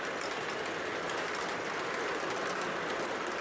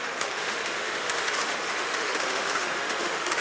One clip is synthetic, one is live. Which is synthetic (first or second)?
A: second